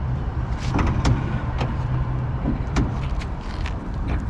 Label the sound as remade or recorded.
remade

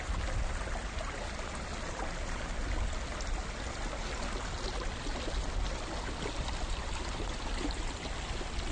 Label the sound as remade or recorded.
recorded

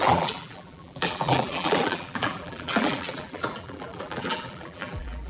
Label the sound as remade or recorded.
remade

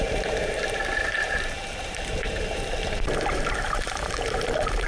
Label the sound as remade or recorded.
remade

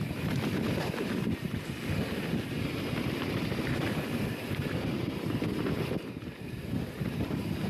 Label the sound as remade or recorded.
recorded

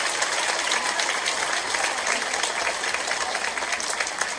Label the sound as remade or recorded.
recorded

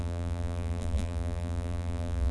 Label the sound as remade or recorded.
remade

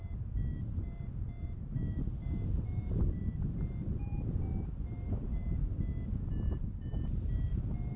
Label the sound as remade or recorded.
recorded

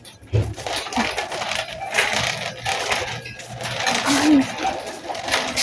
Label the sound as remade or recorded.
recorded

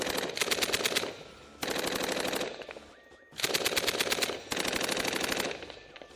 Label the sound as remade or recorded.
recorded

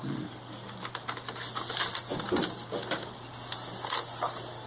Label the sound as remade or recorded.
recorded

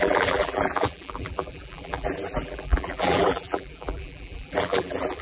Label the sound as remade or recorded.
remade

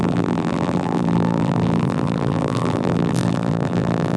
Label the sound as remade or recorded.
remade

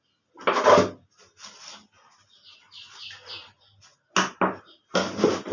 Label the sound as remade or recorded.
recorded